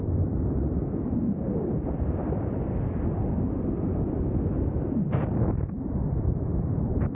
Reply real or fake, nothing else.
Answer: fake